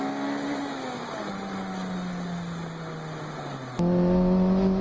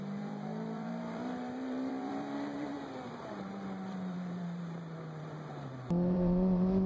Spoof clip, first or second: second